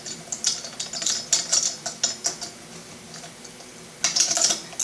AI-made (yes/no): no